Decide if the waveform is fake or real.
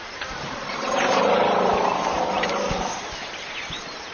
fake